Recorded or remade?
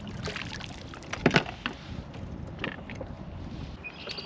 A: recorded